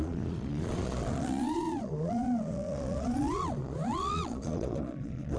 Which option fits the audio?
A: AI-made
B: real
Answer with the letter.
A